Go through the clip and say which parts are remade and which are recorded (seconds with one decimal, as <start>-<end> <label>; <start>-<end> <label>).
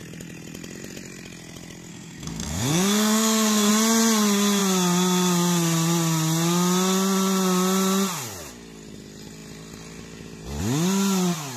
0.0-1.9 recorded; 1.9-3.7 remade; 3.7-11.6 recorded